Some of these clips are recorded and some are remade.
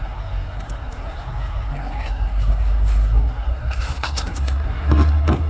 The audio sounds remade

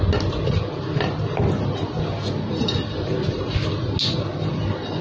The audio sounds recorded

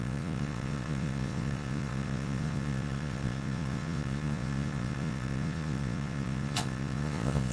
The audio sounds remade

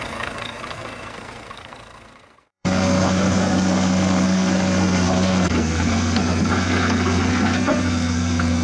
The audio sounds remade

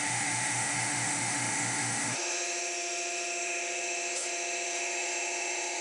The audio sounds remade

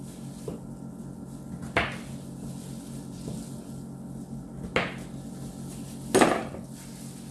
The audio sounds recorded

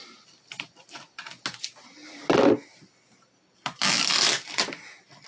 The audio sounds recorded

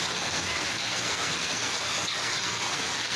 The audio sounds remade